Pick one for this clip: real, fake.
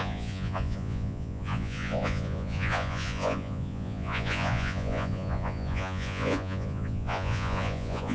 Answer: fake